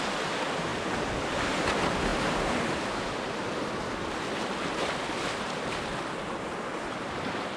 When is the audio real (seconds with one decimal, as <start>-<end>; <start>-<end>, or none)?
0.0-7.6